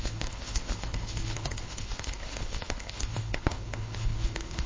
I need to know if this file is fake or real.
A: fake